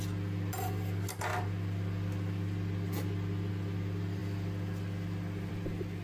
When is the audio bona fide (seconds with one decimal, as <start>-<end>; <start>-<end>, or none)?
0.0-6.0